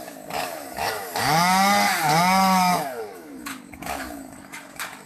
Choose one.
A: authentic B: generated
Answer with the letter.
B